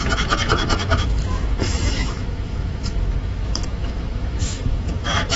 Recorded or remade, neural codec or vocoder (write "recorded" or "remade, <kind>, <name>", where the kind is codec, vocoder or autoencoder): remade, autoencoder, DAC-VAE